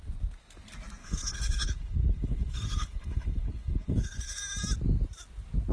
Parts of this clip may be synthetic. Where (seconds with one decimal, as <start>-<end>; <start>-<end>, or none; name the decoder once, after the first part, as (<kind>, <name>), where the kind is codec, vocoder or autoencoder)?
1.0-4.4 (codec, HILCodec)